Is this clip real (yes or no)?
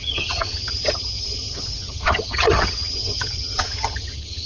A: no